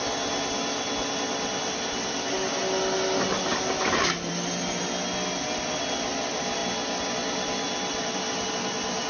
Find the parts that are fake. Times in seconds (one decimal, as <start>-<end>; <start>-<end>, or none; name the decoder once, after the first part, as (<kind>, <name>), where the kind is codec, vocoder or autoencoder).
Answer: none